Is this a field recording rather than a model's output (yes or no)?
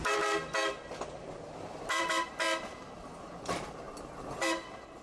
no